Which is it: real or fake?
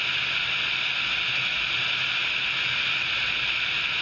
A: real